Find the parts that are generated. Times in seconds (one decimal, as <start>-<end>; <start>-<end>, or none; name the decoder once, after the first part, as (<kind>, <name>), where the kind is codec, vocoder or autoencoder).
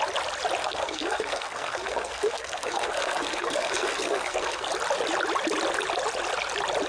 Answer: 0.6-4.7 (codec, SNAC)